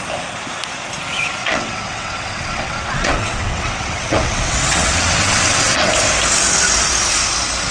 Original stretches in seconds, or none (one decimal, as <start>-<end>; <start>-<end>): 0.0-1.4; 5.9-7.7